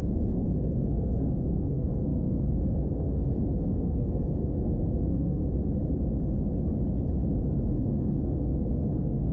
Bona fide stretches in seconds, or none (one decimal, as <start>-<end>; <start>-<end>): 5.4-7.7